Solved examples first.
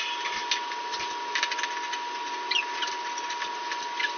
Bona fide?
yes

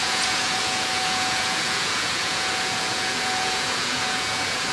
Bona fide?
no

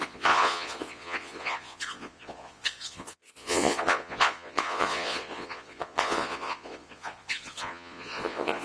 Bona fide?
no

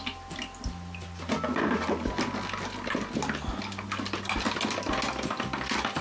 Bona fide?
yes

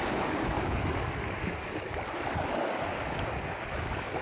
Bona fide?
no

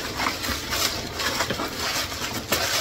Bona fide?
yes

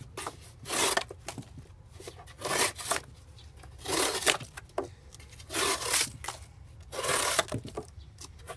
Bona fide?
yes